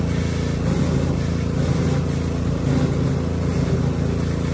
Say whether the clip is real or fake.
real